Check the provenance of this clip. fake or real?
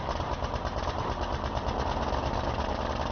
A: real